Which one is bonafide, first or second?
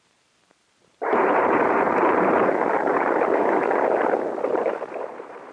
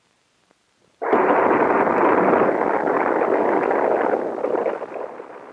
second